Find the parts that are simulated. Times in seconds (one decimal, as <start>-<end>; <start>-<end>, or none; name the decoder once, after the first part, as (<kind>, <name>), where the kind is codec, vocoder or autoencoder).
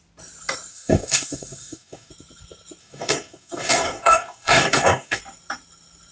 0.7-2.1 (codec, DAC); 2.8-5.2